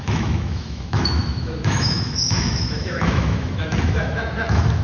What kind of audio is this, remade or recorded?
remade